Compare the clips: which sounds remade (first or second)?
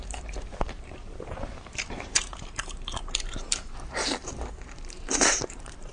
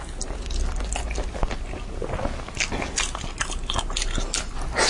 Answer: first